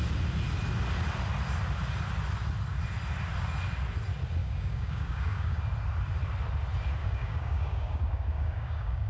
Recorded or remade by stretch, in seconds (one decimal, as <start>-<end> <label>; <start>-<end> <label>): 0.0-4.4 recorded; 4.4-5.6 remade; 5.6-7.0 recorded; 7.0-9.1 remade